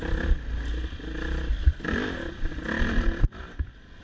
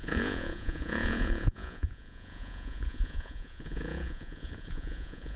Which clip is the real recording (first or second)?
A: first